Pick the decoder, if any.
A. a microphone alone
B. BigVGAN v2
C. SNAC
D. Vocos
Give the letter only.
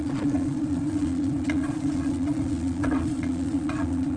D